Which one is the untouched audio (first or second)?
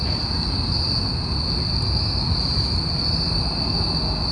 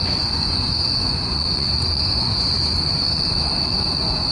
first